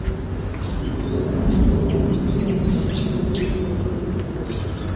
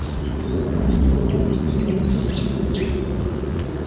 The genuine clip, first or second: first